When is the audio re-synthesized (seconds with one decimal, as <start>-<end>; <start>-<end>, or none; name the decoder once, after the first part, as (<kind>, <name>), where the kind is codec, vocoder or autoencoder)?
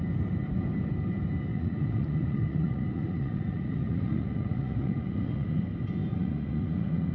1.5-5.6 (vocoder, Vocos); 6.1-7.1